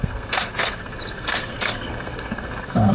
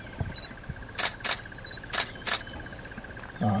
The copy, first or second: first